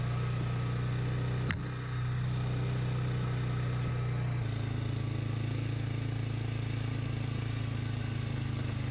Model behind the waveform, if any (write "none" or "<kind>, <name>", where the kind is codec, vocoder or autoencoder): none